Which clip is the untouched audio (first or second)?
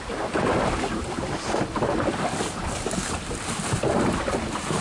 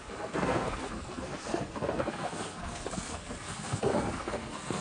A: first